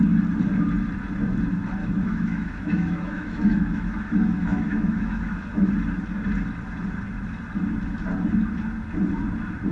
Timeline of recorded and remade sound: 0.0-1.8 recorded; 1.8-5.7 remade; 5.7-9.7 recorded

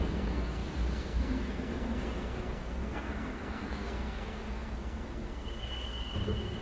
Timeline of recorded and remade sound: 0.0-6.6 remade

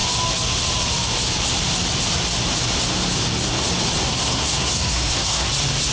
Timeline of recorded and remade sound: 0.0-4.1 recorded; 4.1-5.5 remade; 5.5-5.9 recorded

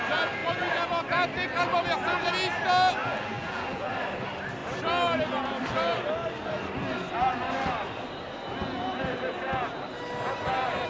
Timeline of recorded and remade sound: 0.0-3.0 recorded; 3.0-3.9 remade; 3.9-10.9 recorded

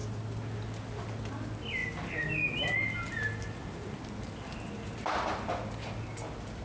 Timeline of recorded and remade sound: 0.0-6.6 recorded